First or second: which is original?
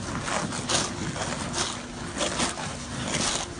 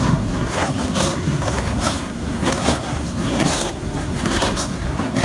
first